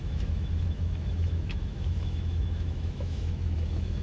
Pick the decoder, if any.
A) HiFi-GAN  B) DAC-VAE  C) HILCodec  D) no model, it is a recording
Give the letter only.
B